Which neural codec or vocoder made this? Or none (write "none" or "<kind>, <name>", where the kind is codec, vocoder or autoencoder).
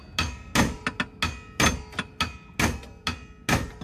none